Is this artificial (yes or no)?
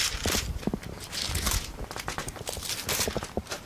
yes